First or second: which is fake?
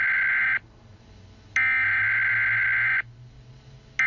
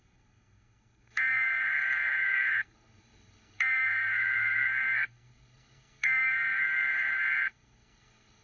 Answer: second